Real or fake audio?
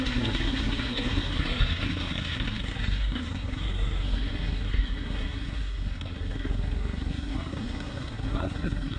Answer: fake